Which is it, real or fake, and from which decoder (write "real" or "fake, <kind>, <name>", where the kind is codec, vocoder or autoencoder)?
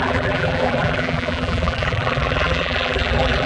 fake, vocoder, BigVGAN v2